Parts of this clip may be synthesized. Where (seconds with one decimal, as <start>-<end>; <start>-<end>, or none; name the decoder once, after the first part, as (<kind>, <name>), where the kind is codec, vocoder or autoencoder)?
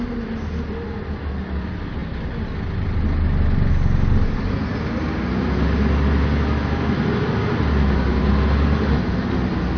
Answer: none